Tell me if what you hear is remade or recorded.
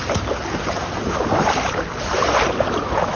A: recorded